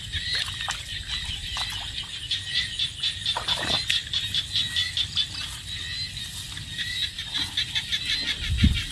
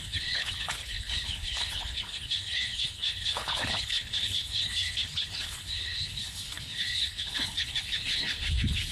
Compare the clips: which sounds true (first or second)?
first